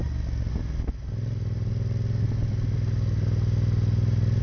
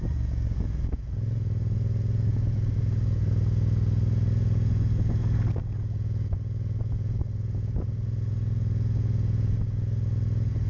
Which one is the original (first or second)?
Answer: first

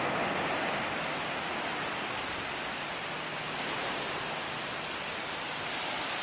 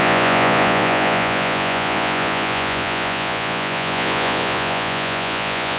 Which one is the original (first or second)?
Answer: first